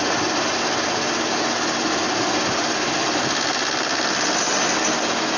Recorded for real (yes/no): yes